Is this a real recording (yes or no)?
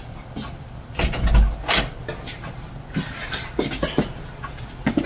yes